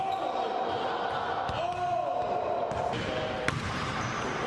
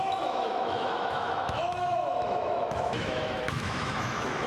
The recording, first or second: first